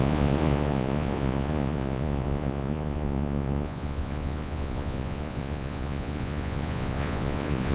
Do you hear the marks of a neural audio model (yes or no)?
yes